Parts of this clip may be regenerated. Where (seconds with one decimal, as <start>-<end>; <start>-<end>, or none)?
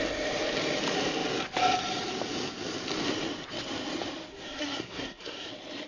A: 4.3-5.5